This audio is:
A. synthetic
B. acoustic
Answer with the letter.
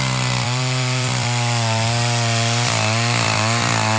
A